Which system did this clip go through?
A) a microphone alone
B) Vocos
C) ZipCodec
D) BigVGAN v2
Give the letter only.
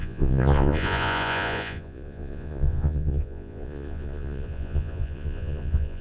B